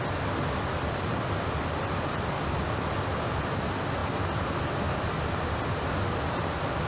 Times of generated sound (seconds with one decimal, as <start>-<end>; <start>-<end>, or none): none